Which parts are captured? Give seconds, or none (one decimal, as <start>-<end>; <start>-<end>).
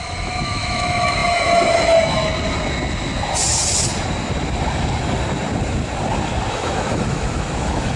2.3-6.5